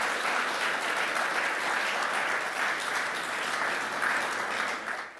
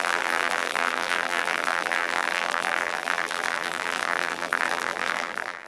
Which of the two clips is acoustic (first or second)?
first